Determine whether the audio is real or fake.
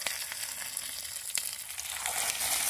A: real